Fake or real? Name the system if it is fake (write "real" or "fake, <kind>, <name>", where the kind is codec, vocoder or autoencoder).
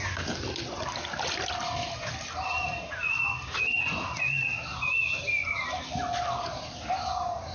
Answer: real